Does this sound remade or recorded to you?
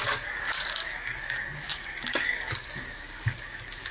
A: remade